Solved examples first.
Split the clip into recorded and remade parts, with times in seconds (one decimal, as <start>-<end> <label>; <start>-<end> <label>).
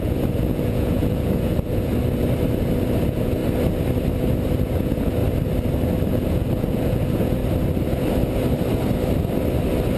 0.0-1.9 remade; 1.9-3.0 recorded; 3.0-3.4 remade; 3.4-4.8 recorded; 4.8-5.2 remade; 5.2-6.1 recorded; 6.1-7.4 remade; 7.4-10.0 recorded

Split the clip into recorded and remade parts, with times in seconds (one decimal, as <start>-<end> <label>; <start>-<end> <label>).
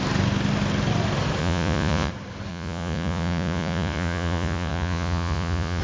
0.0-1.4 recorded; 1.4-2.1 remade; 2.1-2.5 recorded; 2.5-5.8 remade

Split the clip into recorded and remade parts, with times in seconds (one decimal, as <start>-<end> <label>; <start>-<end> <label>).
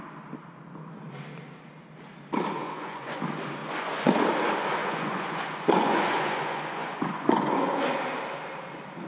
0.0-2.6 recorded; 2.6-3.2 remade; 3.2-3.6 recorded; 3.6-4.1 remade; 4.1-4.8 recorded; 4.8-7.9 remade; 7.9-9.1 recorded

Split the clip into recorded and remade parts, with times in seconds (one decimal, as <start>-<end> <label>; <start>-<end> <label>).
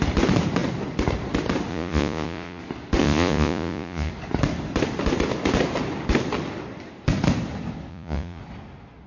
0.0-1.7 recorded; 1.7-2.6 remade; 2.6-3.0 recorded; 3.0-4.1 remade; 4.1-7.9 recorded; 7.9-8.4 remade; 8.4-9.1 recorded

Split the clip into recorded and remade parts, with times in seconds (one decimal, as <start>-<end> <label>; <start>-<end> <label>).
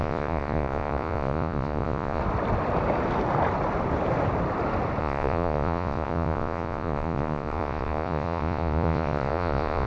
0.0-2.2 remade; 2.2-5.0 recorded; 5.0-9.9 remade